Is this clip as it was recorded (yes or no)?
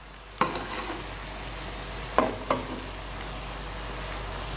yes